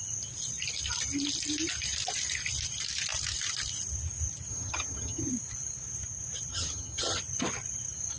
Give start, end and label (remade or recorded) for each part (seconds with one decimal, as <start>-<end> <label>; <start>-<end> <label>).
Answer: 0.0-4.5 recorded; 4.5-5.3 remade; 5.3-6.5 recorded; 6.5-7.2 remade; 7.2-8.2 recorded